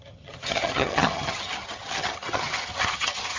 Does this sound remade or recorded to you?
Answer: remade